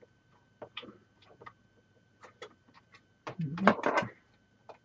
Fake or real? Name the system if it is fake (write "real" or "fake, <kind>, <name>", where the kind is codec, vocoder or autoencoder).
fake, vocoder, BigVGAN v2